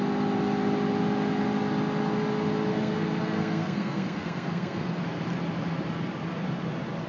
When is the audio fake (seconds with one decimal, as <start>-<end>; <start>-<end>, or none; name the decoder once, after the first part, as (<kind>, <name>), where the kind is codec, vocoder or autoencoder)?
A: 2.7-5.0 (codec, SNAC)

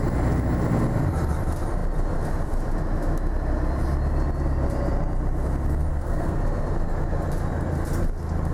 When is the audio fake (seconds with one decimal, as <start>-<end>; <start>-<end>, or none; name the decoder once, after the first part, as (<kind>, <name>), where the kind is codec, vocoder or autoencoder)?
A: 5.9-6.4 (codec, SNAC)

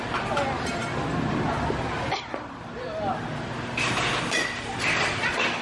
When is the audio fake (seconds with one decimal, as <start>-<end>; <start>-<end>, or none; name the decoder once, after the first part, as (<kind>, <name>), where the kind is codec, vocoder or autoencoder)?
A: none

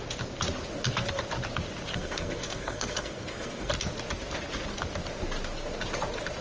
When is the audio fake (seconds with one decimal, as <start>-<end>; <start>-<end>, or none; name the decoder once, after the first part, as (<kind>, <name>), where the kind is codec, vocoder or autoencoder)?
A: 1.9-3.7 (codec, SNAC)